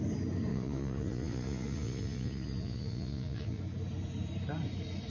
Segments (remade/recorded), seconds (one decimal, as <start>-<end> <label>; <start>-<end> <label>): 0.0-0.5 recorded; 0.5-3.6 remade; 3.6-5.1 recorded